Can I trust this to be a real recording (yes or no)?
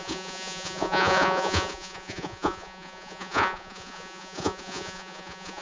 no